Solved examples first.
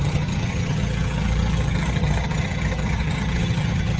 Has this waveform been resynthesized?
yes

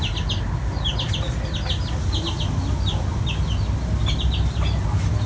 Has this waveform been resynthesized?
no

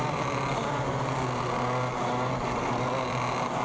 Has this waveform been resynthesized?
no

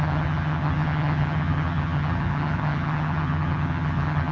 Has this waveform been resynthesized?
yes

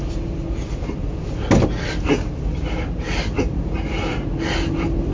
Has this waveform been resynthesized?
no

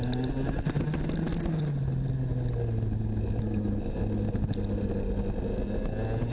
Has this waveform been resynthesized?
no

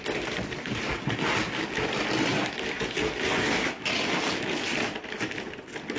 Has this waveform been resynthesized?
no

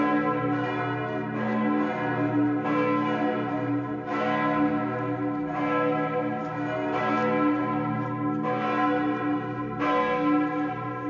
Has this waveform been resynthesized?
no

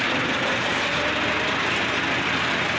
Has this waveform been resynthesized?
no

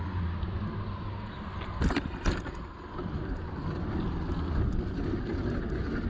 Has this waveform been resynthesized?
no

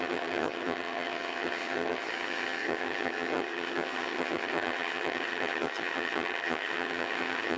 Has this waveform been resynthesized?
yes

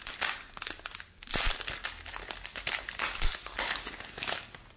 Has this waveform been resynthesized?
no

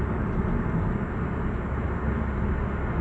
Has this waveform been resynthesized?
no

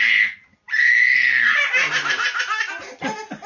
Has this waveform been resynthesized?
no